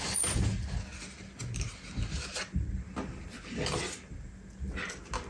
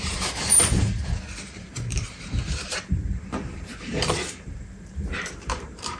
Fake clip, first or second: second